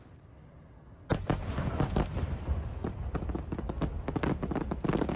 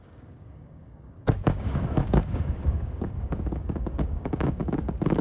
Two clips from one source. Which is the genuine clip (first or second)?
first